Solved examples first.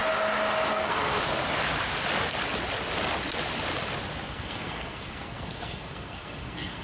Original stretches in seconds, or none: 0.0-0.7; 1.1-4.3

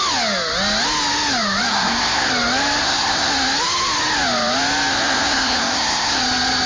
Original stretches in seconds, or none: 0.0-1.7; 2.3-2.8; 3.3-4.9; 6.2-6.7

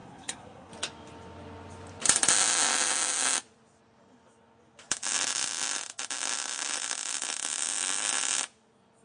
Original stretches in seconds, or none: 0.7-9.0

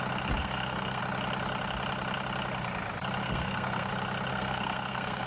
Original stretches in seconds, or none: 0.0-0.4; 1.0-3.2; 3.9-4.3

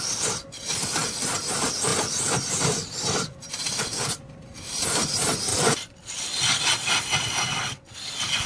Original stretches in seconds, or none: 0.0-8.5

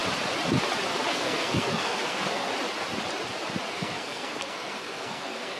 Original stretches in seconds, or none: 0.0-1.1; 2.5-3.7